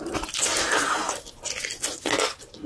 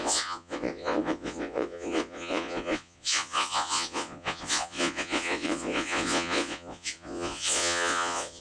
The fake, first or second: second